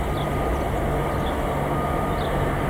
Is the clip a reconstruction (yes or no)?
no